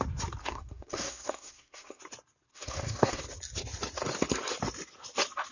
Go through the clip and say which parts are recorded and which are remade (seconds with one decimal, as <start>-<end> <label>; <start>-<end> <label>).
0.0-0.4 recorded; 0.4-2.0 remade; 2.0-2.5 recorded; 2.5-3.2 remade; 3.2-5.5 recorded